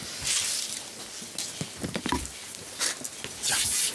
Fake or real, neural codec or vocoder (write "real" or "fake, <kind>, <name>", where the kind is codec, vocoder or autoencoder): real